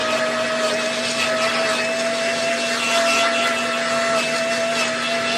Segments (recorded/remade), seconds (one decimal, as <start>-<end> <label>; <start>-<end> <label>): 0.0-5.4 recorded